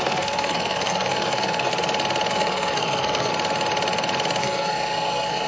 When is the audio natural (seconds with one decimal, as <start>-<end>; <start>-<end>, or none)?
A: 1.7-2.3; 3.3-4.4